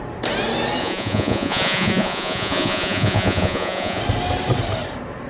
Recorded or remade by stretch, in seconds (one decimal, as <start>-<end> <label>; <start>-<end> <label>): 0.0-0.8 recorded; 0.8-4.0 remade; 4.0-5.3 recorded